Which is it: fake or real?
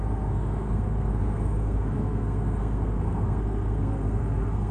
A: fake